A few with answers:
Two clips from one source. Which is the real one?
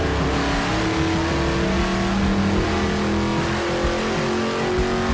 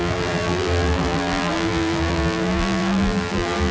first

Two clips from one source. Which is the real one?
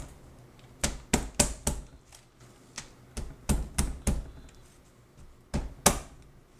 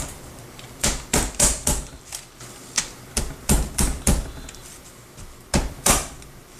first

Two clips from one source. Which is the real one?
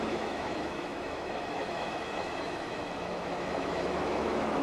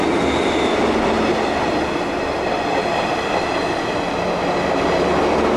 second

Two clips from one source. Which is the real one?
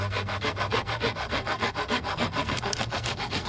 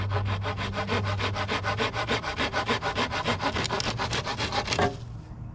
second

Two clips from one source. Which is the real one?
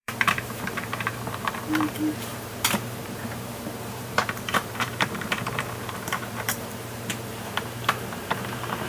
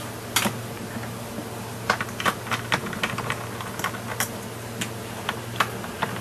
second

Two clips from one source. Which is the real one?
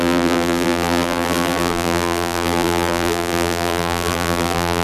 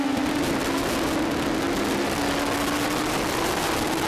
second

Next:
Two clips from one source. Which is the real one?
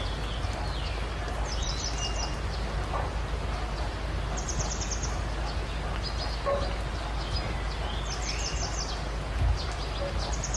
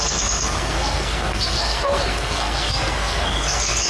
first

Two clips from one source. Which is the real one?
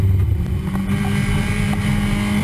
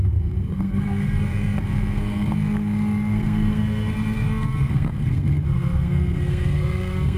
first